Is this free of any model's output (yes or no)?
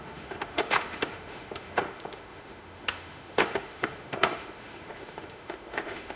no